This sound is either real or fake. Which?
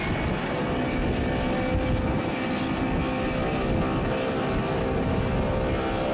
real